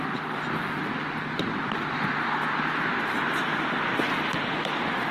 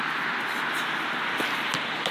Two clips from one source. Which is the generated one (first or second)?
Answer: first